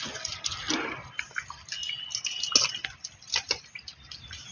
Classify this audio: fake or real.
real